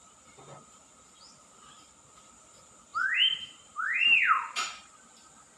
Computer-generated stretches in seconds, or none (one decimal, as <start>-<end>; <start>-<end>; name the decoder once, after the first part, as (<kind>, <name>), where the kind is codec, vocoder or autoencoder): 2.9-4.9 (vocoder, BigVGAN v2)